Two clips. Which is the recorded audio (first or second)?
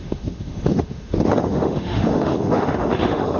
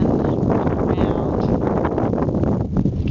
second